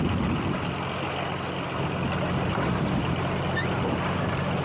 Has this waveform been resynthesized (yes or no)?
no